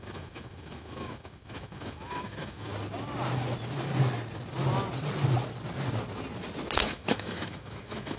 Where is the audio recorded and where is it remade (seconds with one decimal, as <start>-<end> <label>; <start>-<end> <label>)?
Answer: 0.0-2.7 remade; 2.7-6.8 recorded; 6.8-8.2 remade